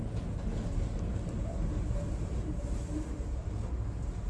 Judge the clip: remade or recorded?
recorded